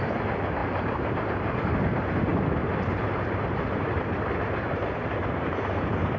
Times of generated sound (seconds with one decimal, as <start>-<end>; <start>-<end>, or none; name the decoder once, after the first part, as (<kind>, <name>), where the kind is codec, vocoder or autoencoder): 0.6-1.6 (vocoder, BigVGAN v2); 2.3-5.8